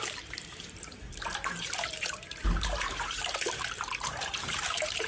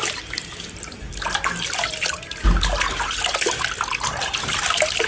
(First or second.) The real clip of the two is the second